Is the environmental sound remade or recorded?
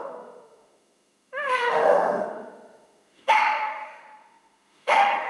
remade